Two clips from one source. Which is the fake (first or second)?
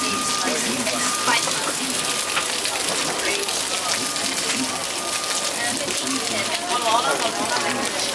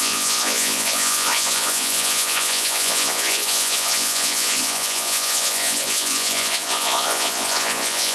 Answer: second